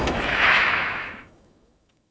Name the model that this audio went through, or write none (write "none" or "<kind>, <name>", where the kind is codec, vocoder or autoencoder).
autoencoder, DAC-VAE